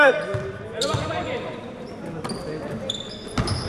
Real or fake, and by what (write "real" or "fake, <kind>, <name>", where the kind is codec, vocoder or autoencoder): fake, vocoder, BigVGAN v2